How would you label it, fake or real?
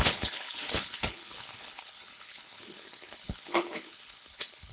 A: fake